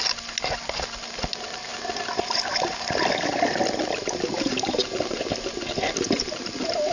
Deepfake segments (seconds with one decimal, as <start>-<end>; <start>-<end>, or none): none